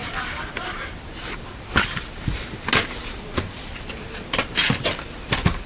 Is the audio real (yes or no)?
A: yes